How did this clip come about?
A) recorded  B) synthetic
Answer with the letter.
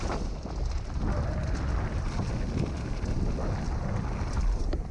A